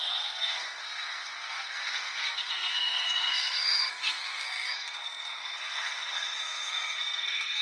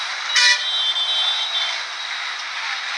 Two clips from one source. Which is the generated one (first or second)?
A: first